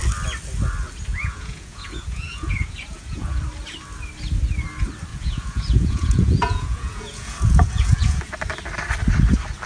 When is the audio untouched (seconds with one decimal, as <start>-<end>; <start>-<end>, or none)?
0.0-1.1; 3.4-5.1; 8.3-9.7